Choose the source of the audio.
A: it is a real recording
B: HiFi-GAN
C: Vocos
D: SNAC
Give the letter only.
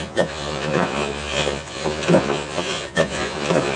C